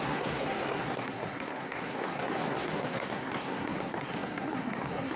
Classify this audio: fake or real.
fake